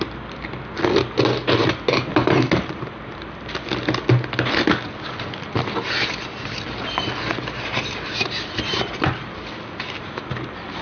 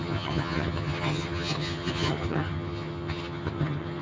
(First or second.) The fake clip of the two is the second